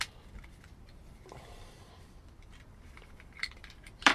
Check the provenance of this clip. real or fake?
fake